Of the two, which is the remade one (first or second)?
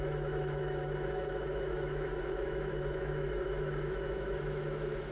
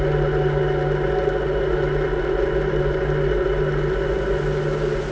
first